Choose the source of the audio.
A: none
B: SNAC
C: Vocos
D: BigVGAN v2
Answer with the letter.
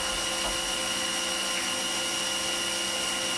A